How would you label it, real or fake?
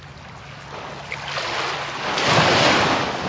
real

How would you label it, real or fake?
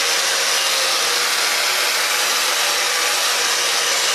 real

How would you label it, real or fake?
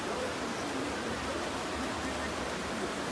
real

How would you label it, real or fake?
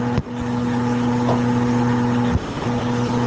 real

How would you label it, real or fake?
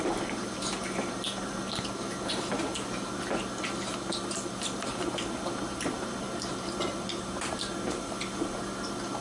fake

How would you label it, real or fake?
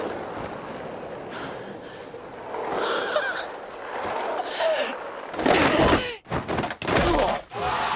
real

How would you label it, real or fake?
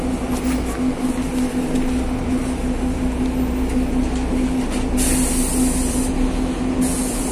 real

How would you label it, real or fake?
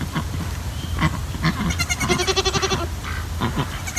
real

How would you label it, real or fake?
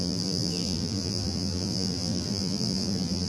fake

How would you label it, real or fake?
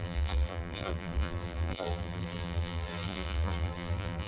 fake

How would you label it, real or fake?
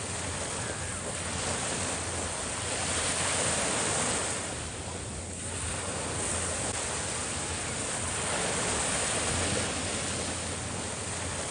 real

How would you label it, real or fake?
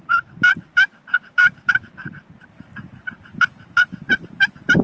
fake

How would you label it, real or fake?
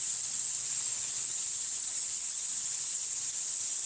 real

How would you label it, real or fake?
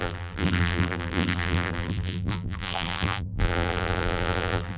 fake